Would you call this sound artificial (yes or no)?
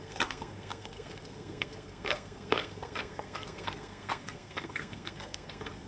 yes